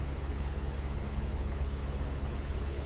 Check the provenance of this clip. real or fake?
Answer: fake